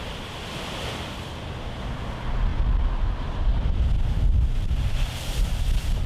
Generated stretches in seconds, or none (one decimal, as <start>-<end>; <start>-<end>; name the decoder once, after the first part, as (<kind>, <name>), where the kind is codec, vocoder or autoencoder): none